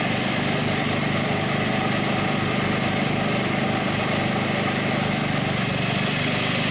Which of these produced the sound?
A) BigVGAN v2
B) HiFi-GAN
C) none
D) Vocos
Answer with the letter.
C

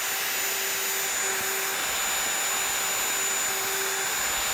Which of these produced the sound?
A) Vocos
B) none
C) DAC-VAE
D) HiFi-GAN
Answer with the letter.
B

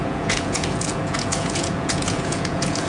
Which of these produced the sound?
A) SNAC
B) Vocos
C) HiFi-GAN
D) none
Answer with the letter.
B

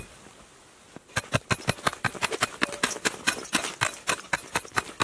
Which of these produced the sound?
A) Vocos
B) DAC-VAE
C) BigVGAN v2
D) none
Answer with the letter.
D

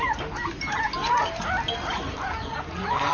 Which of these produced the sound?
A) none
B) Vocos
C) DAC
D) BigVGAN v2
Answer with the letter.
A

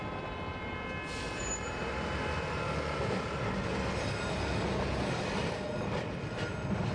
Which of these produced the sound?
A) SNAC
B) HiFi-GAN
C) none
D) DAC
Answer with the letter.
C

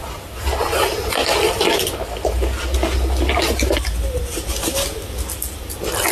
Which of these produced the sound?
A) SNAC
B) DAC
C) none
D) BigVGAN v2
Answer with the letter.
C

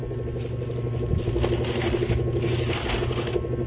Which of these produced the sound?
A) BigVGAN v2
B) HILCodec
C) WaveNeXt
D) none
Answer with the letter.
D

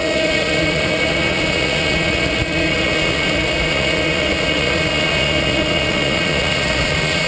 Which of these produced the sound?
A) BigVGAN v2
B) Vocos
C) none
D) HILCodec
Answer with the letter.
B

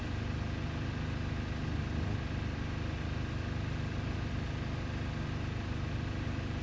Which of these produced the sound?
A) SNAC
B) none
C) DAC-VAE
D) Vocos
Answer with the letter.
B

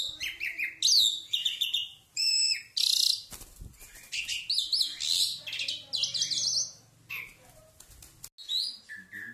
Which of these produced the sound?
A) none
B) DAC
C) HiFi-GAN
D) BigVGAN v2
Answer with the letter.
A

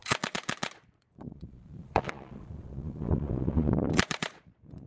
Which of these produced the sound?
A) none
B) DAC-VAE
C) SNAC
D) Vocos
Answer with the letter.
D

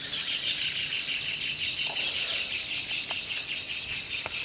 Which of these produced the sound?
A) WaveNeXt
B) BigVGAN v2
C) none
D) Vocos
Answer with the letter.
C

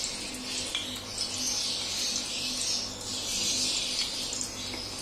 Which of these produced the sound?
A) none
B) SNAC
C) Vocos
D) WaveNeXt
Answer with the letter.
A